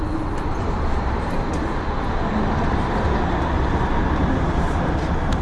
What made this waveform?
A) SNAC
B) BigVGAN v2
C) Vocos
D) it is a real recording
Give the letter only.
D